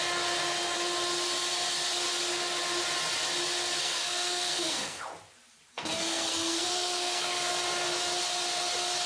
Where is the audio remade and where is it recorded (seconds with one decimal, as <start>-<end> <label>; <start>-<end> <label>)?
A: 0.0-3.8 recorded; 3.8-5.0 remade; 5.0-5.7 recorded; 5.7-7.5 remade; 7.5-9.1 recorded